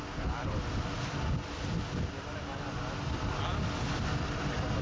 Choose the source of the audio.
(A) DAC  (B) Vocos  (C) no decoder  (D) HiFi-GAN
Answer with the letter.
C